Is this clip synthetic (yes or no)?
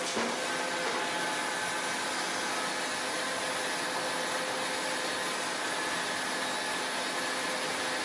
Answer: no